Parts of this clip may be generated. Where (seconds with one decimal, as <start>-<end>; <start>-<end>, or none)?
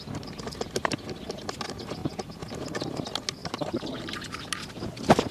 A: 3.4-4.3